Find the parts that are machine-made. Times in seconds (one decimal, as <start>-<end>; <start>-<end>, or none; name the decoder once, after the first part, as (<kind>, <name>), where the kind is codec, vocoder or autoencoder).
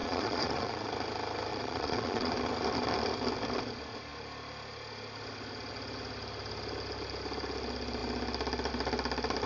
0.0-0.9 (vocoder, Vocos); 1.5-2.3